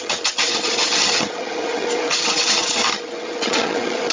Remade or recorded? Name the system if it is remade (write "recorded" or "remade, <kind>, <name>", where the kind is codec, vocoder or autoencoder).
remade, vocoder, HiFi-GAN